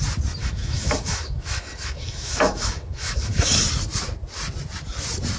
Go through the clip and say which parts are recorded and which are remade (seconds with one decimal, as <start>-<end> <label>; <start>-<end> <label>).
0.0-0.4 recorded; 0.4-3.6 remade; 3.6-5.4 recorded